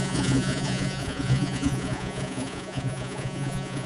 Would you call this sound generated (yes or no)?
yes